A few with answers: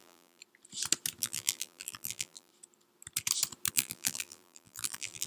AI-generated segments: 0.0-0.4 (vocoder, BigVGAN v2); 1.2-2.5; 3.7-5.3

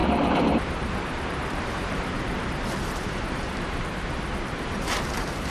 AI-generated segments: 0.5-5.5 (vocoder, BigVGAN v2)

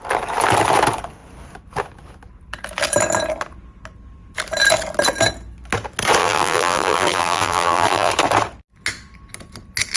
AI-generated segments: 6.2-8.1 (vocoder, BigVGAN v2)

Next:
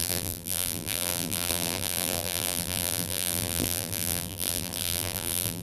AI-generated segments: 0.0-5.6 (vocoder, BigVGAN v2)

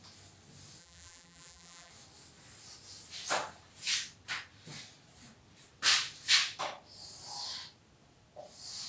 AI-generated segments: 0.8-1.9 (vocoder, BigVGAN v2)

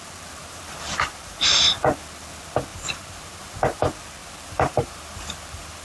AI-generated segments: 0.4-1.8 (vocoder, BigVGAN v2); 2.7-3.5; 4.2-5.8

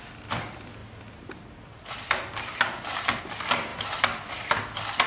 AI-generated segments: none